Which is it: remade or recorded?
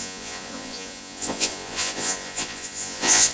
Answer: remade